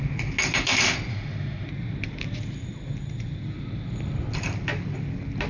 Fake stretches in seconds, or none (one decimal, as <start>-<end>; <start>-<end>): 1.1-1.7